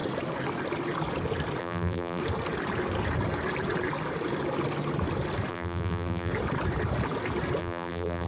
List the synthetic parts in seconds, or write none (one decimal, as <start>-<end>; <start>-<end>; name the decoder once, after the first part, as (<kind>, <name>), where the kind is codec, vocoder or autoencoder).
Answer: 1.6-2.2 (vocoder, BigVGAN v2); 5.5-6.3; 7.6-8.3

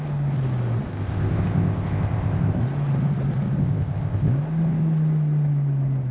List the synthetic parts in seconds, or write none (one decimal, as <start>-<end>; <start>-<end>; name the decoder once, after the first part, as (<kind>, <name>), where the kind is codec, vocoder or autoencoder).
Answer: 0.9-2.6 (codec, ZipCodec); 3.6-4.3

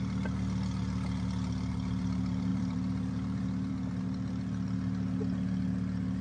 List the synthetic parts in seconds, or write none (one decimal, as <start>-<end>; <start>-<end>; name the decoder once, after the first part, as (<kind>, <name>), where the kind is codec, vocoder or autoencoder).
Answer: 2.5-4.0 (vocoder, BigVGAN v2)

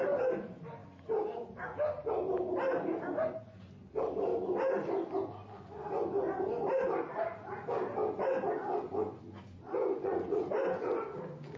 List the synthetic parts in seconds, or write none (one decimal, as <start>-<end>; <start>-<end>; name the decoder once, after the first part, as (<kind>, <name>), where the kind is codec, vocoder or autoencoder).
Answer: 9.8-10.4 (vocoder, Vocos)

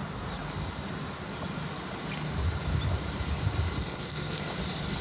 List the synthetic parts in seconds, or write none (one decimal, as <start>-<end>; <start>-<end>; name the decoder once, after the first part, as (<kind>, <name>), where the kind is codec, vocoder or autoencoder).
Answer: 3.8-4.5 (codec, SNAC)

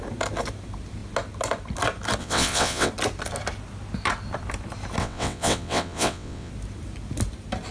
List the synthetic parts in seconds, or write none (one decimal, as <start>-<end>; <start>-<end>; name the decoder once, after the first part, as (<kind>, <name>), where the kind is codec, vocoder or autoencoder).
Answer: 2.2-2.9 (vocoder, WaveNeXt); 5.0-6.5